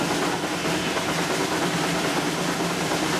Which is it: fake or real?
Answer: real